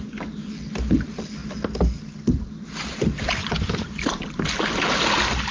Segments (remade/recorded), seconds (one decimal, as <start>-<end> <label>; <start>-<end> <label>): 0.0-5.5 recorded